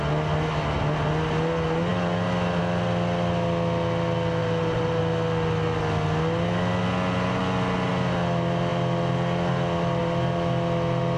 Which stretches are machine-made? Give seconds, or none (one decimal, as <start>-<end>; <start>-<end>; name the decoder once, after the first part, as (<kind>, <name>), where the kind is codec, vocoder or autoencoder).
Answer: 4.4-5.0 (vocoder, BigVGAN v2)